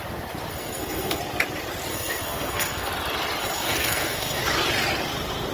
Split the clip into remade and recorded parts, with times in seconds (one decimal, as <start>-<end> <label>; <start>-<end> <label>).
0.0-0.5 recorded; 0.5-1.2 remade; 1.2-1.9 recorded; 1.9-2.9 remade; 2.9-3.4 recorded; 3.4-4.4 remade; 4.4-5.5 recorded